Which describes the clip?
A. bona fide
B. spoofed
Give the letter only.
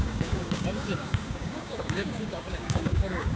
B